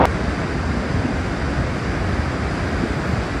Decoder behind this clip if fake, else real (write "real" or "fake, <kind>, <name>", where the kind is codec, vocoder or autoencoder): real